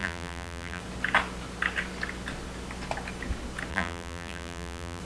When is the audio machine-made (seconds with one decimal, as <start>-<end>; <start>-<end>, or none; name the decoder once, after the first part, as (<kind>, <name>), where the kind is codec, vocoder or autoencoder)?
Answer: 0.0-0.8 (vocoder, BigVGAN v2); 3.7-5.0